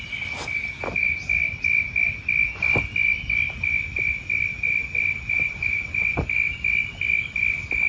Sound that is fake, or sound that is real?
real